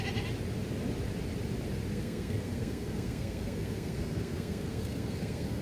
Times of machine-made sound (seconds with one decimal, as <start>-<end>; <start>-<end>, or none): 1.9-5.6